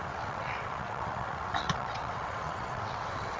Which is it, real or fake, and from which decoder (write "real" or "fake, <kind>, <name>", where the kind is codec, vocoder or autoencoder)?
fake, vocoder, WaveNeXt